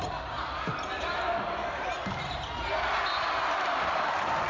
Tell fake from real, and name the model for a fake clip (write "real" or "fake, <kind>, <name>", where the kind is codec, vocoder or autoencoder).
real